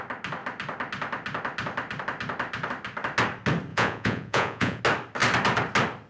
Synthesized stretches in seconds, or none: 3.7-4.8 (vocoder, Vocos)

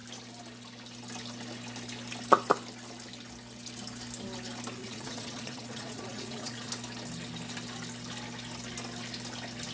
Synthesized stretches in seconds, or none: 4.8-6.7 (vocoder, Vocos)

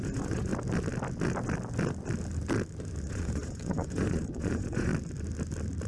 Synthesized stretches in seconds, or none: 0.0-0.5 (vocoder, Vocos); 3.1-4.9

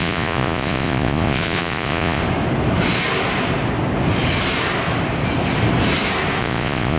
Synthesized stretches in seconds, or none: 0.0-2.2 (vocoder, Vocos); 6.4-7.0

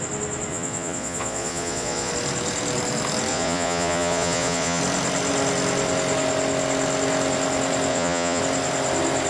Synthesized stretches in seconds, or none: 0.5-2.1 (vocoder, Vocos); 3.3-4.8; 7.9-8.4